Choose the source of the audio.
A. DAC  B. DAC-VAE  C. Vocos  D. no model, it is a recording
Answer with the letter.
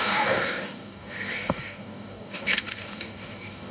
A